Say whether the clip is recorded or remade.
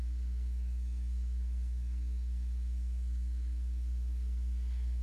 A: remade